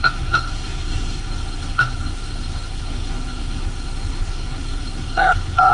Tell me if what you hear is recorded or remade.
remade